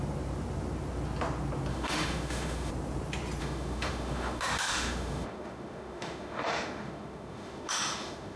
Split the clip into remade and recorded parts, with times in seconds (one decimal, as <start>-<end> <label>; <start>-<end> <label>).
0.0-1.7 recorded; 1.7-2.7 remade; 2.7-3.4 recorded; 3.4-8.4 remade